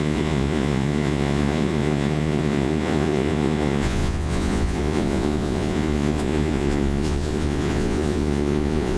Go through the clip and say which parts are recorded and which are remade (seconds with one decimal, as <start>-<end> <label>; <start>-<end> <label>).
0.0-9.0 remade